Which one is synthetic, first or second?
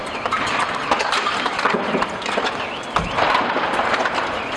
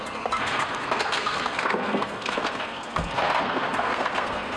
second